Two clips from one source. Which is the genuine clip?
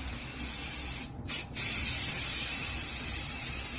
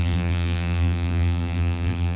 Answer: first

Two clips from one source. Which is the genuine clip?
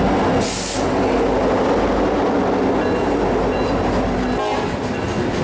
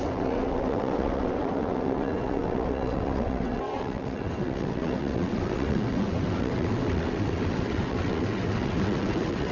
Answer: first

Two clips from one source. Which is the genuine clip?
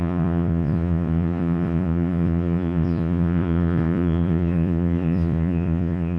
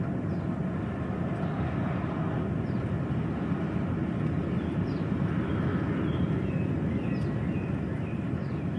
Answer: second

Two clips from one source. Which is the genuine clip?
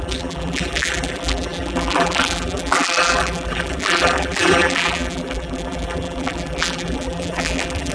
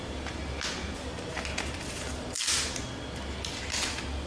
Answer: second